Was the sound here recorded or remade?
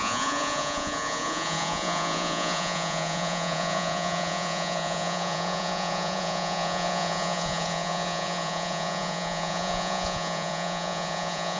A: remade